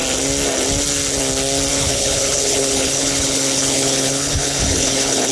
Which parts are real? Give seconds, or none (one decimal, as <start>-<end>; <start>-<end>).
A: 0.0-1.7